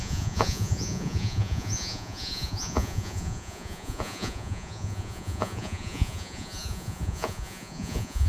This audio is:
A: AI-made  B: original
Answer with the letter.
A